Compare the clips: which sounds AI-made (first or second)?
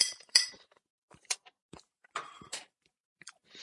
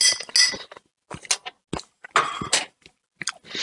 first